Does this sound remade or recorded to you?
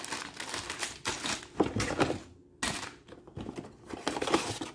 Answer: recorded